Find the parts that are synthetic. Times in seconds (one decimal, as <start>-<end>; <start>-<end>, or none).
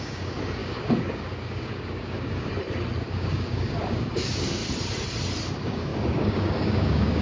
0.0-2.5; 3.0-4.6; 5.5-7.2